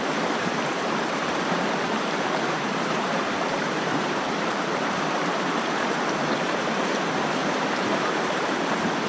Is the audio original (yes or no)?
no